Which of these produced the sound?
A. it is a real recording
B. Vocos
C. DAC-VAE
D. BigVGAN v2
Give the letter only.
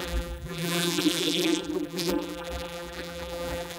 D